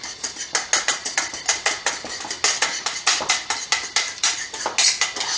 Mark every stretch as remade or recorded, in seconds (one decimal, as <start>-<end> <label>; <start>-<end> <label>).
0.0-5.4 recorded